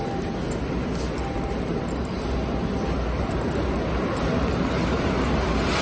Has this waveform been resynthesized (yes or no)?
no